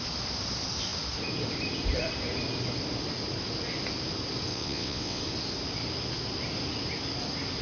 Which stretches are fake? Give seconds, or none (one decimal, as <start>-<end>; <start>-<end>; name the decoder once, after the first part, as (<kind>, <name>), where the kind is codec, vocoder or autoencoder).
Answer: 4.5-5.2 (vocoder, WaveNeXt)